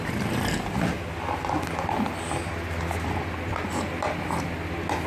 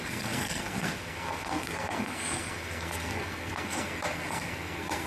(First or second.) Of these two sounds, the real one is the first